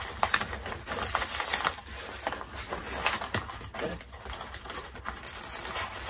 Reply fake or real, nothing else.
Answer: real